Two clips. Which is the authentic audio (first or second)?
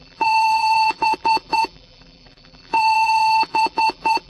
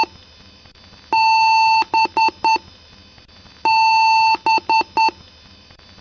second